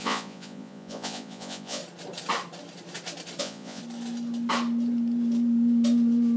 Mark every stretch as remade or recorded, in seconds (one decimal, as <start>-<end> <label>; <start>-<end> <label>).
0.0-1.8 remade; 1.8-3.4 recorded; 3.4-3.8 remade; 3.8-6.4 recorded